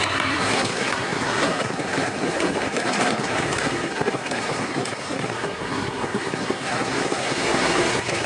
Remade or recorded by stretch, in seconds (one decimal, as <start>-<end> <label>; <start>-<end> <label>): 0.0-8.3 remade